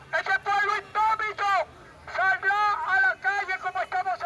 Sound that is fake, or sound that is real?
real